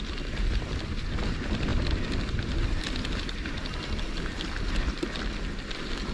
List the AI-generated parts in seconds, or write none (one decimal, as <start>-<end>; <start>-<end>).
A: none